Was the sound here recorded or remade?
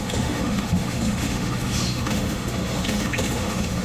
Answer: remade